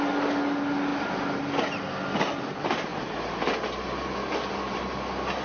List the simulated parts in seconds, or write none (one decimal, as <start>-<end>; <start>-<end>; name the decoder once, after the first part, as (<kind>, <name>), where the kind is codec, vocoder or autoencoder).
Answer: none